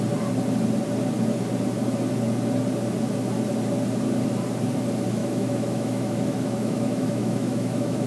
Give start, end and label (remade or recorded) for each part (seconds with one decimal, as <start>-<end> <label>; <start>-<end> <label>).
0.0-5.2 recorded; 5.2-8.1 remade